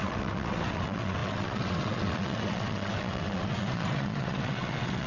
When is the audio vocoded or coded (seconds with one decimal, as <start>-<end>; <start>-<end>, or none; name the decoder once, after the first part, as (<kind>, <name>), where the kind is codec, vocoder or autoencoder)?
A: 0.0-5.1 (vocoder, WaveNeXt)